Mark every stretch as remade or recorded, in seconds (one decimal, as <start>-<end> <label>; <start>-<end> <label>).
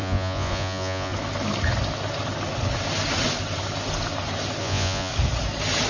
0.0-1.1 remade; 1.1-4.6 recorded; 4.6-5.1 remade; 5.1-5.9 recorded